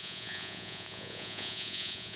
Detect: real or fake fake